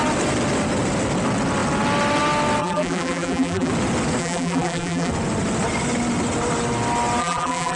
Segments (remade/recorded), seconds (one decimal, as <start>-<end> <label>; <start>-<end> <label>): 0.0-2.6 recorded; 2.6-3.7 remade; 3.7-4.2 recorded; 4.2-5.1 remade; 5.1-7.2 recorded; 7.2-7.8 remade